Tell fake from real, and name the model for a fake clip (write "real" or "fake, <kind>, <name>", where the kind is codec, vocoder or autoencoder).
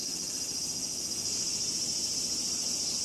real